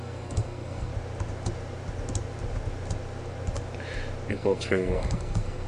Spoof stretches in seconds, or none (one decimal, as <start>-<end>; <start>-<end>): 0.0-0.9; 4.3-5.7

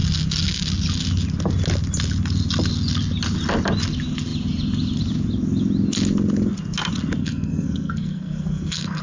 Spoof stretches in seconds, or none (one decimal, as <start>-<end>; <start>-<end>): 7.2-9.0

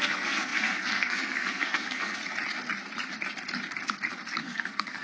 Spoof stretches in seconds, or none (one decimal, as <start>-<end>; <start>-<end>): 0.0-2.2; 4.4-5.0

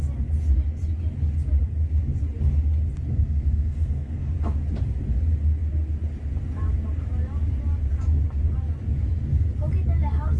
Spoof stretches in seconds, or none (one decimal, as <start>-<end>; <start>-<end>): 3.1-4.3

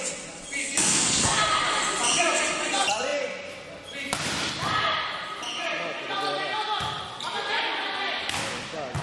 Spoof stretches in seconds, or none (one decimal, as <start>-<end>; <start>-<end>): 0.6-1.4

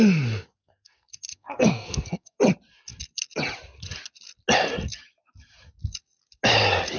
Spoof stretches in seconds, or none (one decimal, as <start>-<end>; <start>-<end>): 0.6-2.4

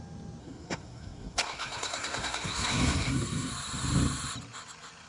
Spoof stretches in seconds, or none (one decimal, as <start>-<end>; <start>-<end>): 0.4-3.5